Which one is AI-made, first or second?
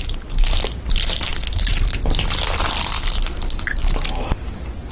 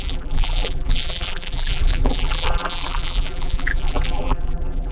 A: second